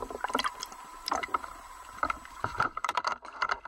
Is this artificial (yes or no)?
yes